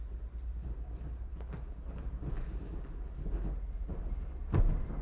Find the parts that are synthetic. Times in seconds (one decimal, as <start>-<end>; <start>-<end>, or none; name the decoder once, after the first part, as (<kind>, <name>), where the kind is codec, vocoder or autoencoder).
none